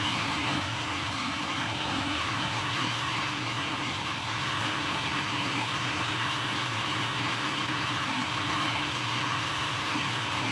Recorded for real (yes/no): no